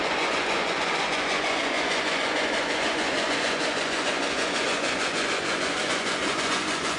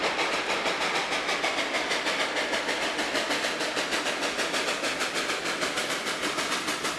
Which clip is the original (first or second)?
second